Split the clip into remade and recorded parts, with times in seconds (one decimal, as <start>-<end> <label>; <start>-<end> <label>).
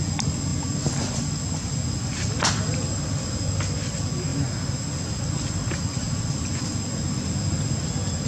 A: 0.0-8.3 recorded